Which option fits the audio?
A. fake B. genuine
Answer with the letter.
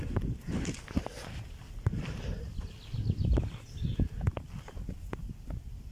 B